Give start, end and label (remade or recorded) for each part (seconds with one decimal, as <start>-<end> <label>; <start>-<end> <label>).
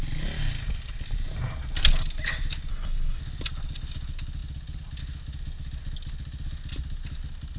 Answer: 0.0-2.7 recorded; 2.7-3.2 remade; 3.2-7.6 recorded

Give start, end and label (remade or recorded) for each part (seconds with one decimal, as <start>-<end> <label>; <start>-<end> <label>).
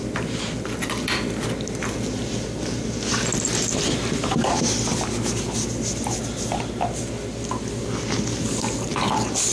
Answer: 0.0-9.5 recorded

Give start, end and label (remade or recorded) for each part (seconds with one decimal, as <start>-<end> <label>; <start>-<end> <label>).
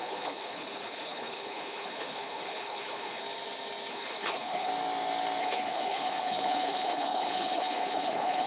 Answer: 0.0-3.2 remade; 3.2-3.9 recorded; 3.9-4.7 remade; 4.7-5.4 recorded; 5.4-8.5 remade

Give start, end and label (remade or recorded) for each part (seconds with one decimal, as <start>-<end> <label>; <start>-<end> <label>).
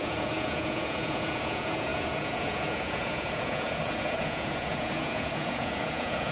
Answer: 0.0-6.3 remade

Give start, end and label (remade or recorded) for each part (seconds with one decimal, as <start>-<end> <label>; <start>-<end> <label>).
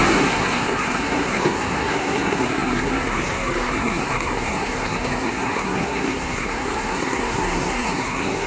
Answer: 0.0-8.5 remade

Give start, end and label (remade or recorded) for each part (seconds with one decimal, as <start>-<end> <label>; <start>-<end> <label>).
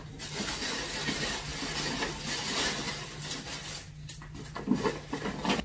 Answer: 0.0-5.6 recorded